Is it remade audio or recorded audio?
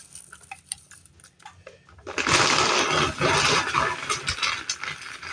recorded